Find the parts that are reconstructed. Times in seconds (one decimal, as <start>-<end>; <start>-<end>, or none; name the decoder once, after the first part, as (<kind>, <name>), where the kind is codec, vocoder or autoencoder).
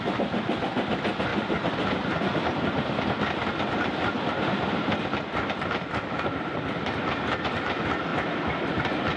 none